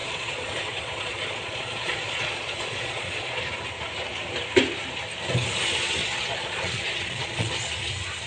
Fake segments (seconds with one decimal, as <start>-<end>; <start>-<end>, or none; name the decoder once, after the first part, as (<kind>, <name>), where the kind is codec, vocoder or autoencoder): 0.0-3.4 (vocoder, Vocos); 6.0-7.5